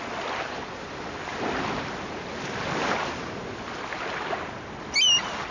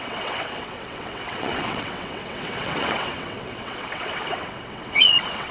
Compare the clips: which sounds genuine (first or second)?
first